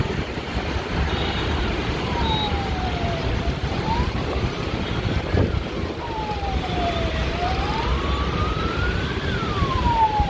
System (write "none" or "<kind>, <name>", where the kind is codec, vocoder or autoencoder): vocoder, BigVGAN v2